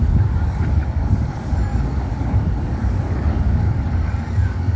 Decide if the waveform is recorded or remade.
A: remade